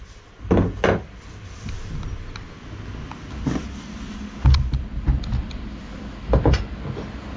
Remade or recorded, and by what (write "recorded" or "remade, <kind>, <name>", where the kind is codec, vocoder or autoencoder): recorded